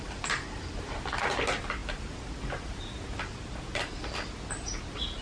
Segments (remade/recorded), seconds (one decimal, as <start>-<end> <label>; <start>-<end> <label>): 0.0-5.2 recorded